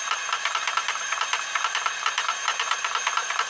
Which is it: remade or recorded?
remade